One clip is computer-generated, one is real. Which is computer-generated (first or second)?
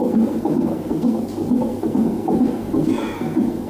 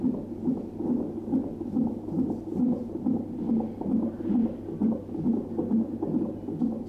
first